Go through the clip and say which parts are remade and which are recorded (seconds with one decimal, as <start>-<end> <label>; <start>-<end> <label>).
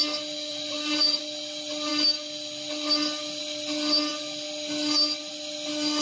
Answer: 0.0-0.5 recorded; 0.5-1.2 remade; 1.2-6.0 recorded